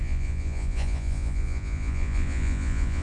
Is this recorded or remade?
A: remade